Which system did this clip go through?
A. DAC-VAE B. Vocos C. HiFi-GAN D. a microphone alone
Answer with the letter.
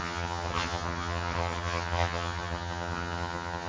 C